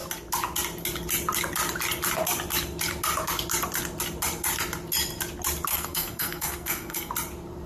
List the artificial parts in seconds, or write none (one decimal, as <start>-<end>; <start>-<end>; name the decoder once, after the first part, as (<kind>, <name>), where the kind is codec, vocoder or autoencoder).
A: 5.7-7.1 (codec, SNAC)